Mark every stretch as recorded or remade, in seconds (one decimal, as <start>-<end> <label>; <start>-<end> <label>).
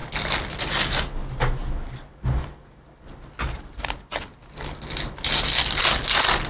0.0-6.5 recorded